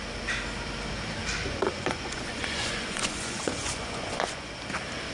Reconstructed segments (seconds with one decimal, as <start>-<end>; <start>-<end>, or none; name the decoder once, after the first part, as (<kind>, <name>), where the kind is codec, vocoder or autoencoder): 1.4-4.5 (vocoder, Vocos)